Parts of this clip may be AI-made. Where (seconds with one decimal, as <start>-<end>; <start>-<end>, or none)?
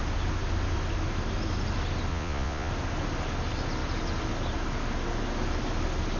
2.1-2.7